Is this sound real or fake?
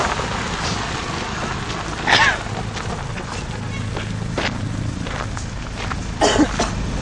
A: real